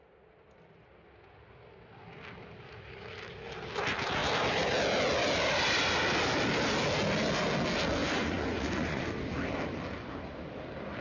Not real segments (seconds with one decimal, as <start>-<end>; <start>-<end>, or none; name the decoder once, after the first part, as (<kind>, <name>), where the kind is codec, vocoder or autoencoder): 8.0-9.0 (vocoder, Vocos)